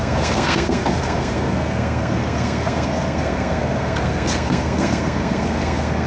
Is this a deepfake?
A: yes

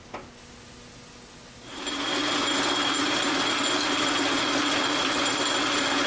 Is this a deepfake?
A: no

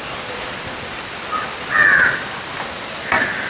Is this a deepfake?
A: no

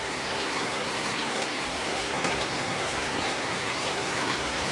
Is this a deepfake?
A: yes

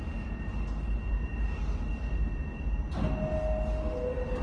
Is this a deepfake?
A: no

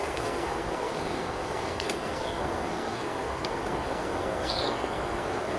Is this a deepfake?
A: yes